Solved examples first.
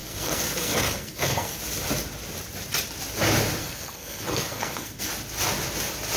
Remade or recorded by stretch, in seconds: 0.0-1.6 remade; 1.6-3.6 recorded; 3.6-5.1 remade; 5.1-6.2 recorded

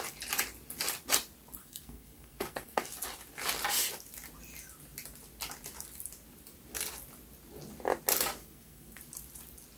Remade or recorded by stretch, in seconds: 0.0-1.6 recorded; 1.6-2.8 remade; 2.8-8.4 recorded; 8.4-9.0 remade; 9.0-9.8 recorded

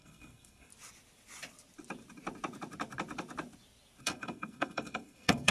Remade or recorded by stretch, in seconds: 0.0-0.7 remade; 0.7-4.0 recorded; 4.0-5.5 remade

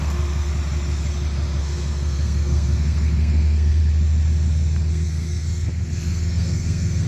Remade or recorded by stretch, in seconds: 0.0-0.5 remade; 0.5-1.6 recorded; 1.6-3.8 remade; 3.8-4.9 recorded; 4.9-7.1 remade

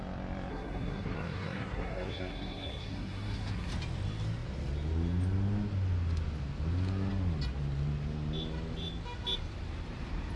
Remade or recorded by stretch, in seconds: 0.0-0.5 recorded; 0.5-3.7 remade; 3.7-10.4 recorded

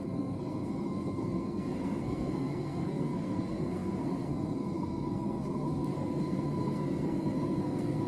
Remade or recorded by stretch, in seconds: 0.0-8.1 remade